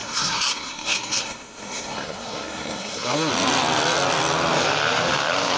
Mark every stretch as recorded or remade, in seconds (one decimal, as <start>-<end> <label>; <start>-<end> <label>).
0.0-3.3 remade; 3.3-5.6 recorded